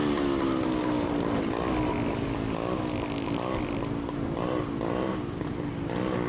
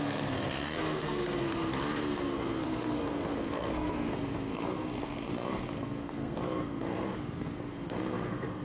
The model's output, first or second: second